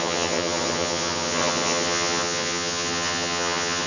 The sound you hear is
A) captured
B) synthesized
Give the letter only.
B